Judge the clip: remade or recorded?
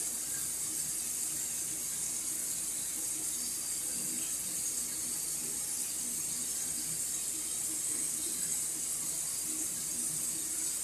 recorded